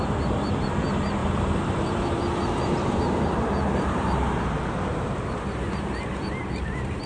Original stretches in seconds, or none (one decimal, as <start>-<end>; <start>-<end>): 0.0-1.2; 4.4-4.9

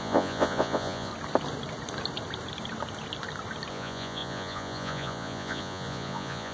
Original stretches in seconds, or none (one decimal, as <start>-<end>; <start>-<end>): 1.1-3.7

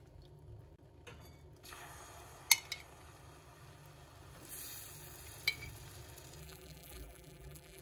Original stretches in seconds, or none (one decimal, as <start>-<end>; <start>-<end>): 0.0-6.4